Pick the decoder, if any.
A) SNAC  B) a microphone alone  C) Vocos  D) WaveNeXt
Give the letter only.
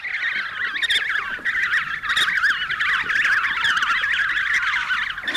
B